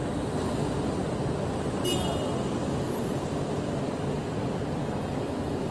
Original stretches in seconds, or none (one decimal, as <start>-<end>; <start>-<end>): 0.0-4.8